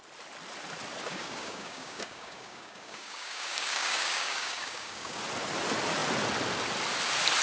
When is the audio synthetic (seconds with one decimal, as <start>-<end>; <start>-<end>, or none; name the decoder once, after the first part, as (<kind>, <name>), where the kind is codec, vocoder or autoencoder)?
1.1-5.2 (codec, DAC)